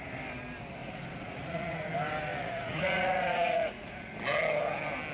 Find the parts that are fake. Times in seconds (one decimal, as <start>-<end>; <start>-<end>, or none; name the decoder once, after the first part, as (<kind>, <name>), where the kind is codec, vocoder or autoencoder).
0.8-1.9 (vocoder, Vocos); 2.3-3.9